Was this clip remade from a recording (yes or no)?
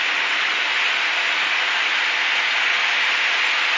no